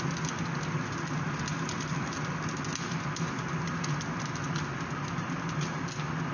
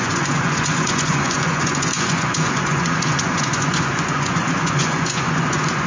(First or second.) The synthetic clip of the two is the second